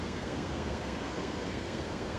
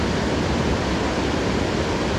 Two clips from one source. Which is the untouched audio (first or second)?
second